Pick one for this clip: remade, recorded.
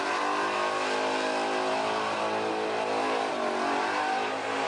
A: recorded